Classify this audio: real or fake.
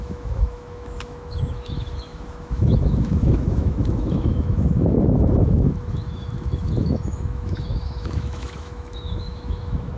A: fake